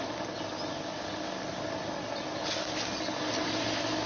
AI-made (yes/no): no